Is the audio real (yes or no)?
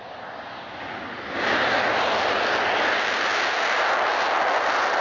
yes